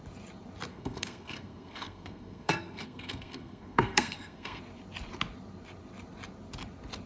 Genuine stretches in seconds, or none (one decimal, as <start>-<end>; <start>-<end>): 0.0-0.7; 4.6-7.1